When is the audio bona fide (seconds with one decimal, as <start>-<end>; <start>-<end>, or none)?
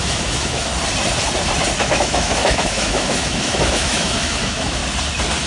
0.7-1.8; 4.8-5.5